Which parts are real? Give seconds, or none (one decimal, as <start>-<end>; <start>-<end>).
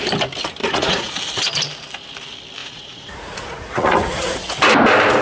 0.0-0.6; 1.1-2.6; 4.5-5.2